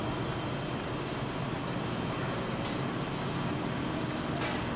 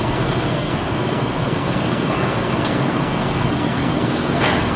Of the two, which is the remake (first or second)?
second